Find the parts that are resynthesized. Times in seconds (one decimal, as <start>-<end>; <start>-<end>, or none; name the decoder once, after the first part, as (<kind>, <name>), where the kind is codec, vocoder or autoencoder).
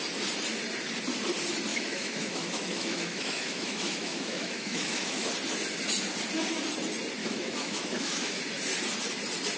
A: 1.7-5.3 (autoencoder, DAC-VAE); 7.2-8.4